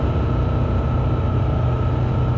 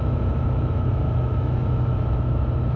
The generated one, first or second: second